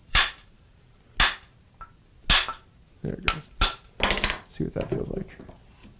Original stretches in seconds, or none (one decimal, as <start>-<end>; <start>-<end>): 0.8-6.0